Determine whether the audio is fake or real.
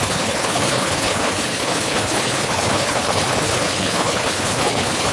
fake